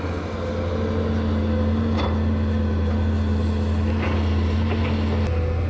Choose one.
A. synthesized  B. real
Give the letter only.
B